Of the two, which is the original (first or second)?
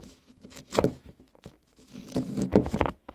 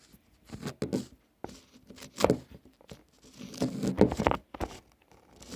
second